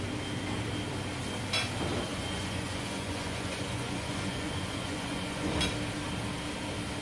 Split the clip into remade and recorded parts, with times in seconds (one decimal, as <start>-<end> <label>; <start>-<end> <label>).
0.0-2.1 recorded; 2.1-5.5 remade; 5.5-7.0 recorded